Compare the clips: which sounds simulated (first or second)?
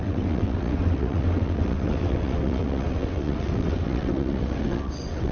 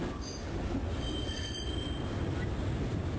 first